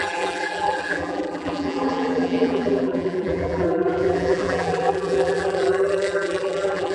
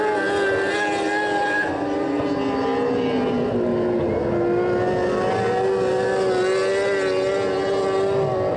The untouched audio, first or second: second